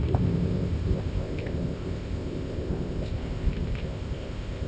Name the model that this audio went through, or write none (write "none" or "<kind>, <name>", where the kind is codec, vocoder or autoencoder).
codec, ZipCodec